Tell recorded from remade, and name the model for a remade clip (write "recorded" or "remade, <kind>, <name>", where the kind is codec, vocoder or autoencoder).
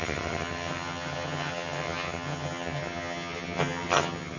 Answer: remade, vocoder, HiFi-GAN